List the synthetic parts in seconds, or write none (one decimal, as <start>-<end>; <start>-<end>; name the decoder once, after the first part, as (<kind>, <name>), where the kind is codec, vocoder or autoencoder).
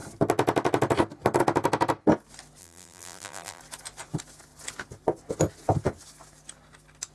2.6-3.6 (vocoder, BigVGAN v2)